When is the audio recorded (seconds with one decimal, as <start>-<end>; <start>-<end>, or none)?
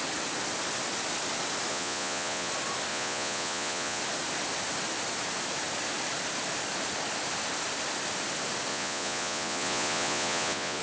0.0-1.7; 2.5-2.9; 4.0-8.7